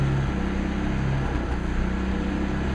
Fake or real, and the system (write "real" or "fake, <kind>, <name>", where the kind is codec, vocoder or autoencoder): real